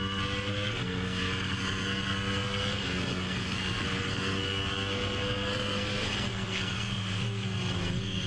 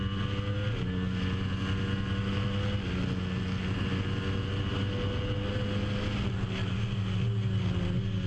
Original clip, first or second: second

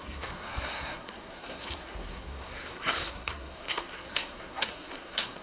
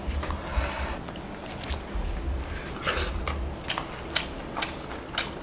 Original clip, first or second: second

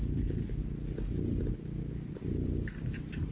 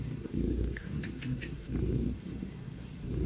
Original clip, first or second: first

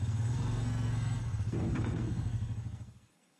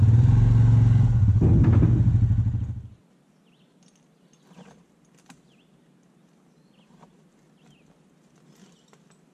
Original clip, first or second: second